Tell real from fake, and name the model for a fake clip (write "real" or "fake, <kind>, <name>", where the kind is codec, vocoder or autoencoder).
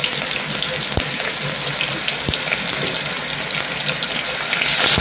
real